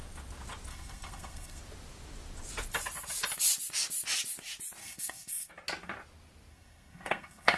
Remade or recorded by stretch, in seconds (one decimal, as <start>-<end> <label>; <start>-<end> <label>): 0.0-0.7 recorded; 0.7-1.6 remade; 1.6-4.8 recorded; 4.8-5.5 remade; 5.5-6.5 recorded; 6.5-7.6 remade